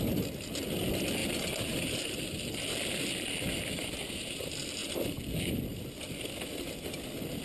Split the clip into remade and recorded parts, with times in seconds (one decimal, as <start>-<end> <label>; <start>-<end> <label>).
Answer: 0.0-7.4 recorded